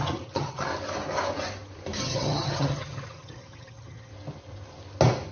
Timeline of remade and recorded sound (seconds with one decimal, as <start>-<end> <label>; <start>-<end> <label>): 0.0-0.7 remade; 0.7-2.0 recorded; 2.0-4.1 remade; 4.1-5.3 recorded